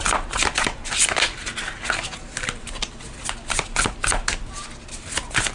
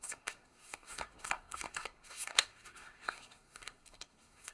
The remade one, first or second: second